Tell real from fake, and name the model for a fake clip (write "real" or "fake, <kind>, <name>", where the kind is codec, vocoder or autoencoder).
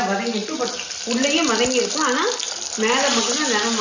real